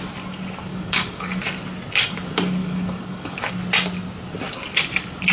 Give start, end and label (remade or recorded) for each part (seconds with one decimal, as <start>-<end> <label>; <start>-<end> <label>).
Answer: 0.0-0.7 recorded; 0.7-1.4 remade; 1.4-2.6 recorded; 2.6-3.5 remade; 3.5-5.3 recorded